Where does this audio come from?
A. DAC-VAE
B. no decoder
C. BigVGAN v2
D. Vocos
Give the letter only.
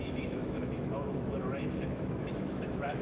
A